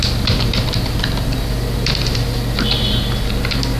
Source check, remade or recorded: recorded